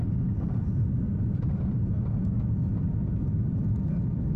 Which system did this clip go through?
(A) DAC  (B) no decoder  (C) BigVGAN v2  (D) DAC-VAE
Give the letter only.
B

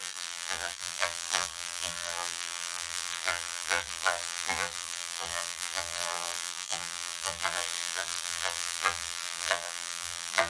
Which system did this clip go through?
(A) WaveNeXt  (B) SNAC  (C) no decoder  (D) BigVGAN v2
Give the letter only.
D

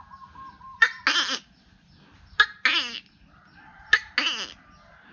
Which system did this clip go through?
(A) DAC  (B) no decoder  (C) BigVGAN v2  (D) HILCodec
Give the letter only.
B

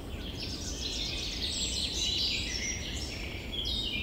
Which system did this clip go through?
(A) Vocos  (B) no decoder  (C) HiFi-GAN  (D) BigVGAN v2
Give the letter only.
B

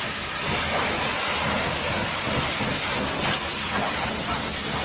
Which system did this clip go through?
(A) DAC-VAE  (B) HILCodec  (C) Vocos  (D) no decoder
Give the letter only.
D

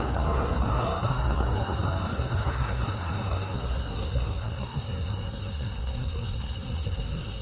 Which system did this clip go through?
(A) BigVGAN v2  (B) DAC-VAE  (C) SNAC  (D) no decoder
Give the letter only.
C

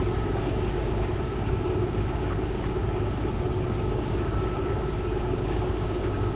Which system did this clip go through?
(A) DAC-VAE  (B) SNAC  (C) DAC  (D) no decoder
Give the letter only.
C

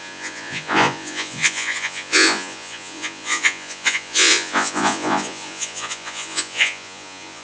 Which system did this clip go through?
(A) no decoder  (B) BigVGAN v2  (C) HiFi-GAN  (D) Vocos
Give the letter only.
D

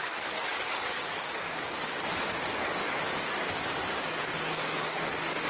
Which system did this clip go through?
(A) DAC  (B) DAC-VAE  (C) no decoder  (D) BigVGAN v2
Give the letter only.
A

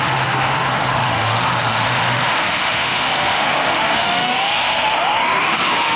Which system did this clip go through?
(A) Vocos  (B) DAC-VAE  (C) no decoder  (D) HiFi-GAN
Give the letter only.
B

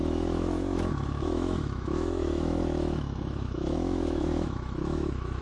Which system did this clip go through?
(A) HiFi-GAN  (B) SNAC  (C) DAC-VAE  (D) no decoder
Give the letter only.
C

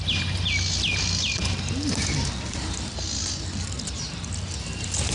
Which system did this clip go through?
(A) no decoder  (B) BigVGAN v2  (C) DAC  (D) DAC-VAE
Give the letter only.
A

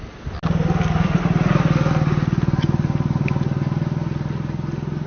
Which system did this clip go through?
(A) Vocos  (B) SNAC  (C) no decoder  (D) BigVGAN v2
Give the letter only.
C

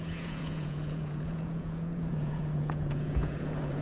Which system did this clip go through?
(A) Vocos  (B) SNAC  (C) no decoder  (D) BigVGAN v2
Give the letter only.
A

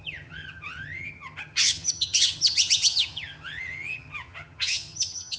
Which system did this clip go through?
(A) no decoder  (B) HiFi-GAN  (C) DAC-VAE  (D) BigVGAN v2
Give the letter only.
B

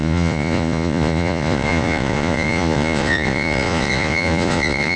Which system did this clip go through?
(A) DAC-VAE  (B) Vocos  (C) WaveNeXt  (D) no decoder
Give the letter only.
B